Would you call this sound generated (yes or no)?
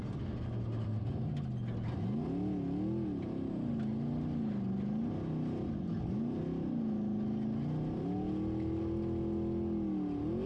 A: no